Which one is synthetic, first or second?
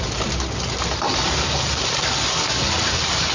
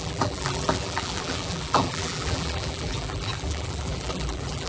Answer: second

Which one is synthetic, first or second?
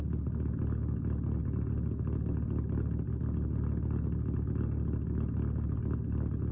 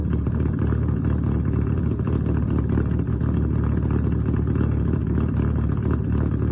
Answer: second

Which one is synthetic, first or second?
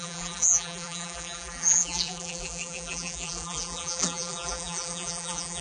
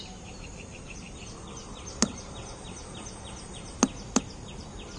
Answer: first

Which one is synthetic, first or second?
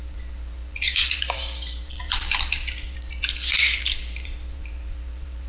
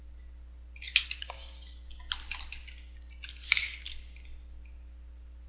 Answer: first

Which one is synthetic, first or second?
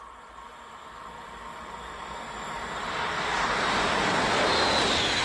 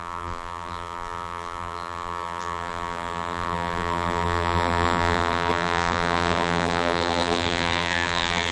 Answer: second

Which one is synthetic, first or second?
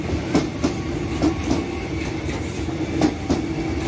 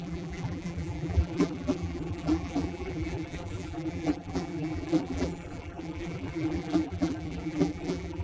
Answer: second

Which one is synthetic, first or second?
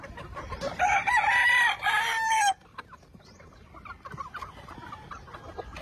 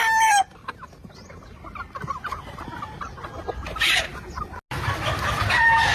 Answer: first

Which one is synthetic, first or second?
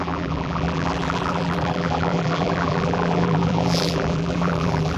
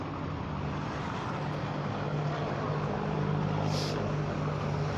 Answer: first